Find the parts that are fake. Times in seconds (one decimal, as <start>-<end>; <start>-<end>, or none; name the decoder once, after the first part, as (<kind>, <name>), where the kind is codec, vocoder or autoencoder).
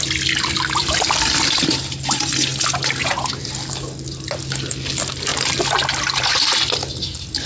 none